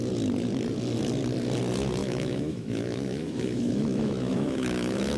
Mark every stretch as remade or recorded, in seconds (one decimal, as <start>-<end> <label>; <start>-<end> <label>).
0.0-2.0 recorded; 2.0-5.2 remade